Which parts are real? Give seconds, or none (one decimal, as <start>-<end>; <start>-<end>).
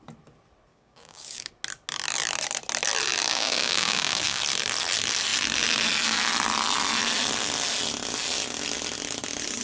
0.0-0.7; 1.5-3.3; 4.4-9.6